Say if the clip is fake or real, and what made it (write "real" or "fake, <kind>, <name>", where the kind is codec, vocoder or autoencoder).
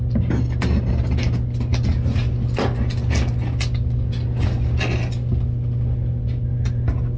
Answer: real